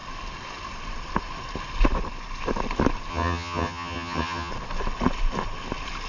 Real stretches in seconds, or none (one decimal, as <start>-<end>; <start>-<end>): 0.0-3.1; 4.5-6.1